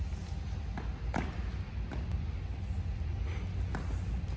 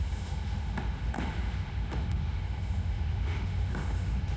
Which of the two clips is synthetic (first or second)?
second